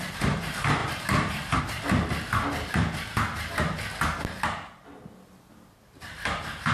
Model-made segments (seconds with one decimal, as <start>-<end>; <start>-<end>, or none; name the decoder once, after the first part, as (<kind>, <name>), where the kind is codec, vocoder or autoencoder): none